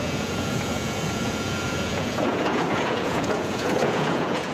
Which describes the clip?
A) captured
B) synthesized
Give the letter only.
B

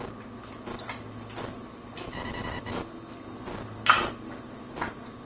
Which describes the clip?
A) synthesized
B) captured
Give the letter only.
B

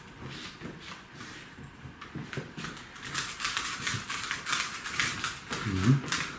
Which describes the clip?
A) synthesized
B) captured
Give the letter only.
B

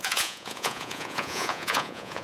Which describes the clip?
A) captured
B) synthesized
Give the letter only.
B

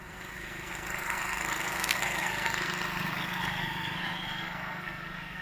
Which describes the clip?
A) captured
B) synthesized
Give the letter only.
B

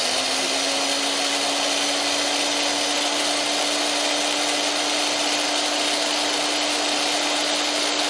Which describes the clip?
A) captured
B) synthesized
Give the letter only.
A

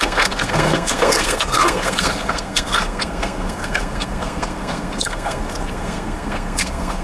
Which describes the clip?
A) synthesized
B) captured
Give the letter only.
A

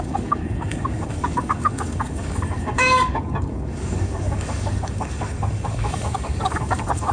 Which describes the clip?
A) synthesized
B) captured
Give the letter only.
A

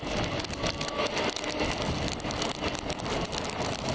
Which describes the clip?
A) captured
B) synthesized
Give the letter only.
A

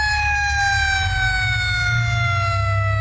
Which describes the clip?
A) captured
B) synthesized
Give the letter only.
A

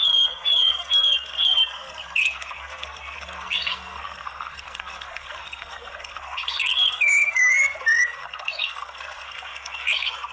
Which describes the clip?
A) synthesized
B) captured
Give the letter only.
A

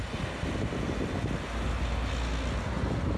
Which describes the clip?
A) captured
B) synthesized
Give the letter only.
A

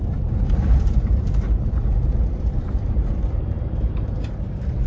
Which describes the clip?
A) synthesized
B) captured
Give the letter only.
A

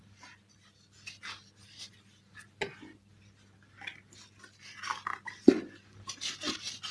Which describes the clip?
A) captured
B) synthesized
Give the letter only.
A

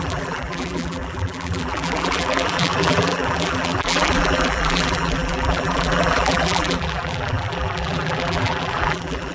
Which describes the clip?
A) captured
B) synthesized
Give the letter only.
B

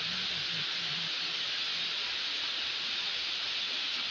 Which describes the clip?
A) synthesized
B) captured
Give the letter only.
B